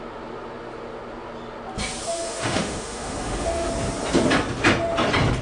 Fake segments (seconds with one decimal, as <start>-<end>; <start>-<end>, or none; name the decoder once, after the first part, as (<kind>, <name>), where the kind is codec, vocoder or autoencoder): 2.1-3.7 (autoencoder, DAC-VAE)